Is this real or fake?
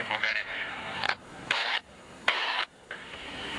fake